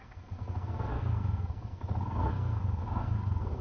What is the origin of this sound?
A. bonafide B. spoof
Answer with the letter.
B